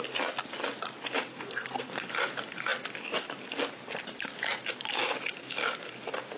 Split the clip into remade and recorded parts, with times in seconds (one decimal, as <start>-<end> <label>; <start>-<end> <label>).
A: 0.0-1.3 recorded; 1.3-2.1 remade; 2.1-6.4 recorded